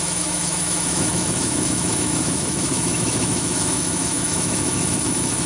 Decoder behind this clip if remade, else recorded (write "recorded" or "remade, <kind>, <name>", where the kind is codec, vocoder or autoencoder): remade, autoencoder, DAC-VAE